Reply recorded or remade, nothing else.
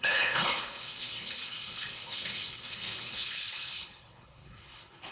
remade